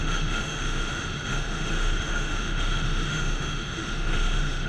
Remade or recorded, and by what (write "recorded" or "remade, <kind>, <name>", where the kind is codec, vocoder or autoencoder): remade, autoencoder, DAC-VAE